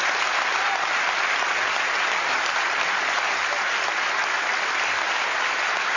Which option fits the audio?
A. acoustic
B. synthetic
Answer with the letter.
A